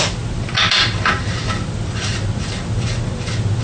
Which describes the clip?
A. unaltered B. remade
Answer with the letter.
A